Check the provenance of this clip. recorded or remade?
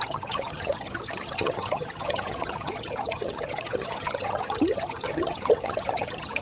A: remade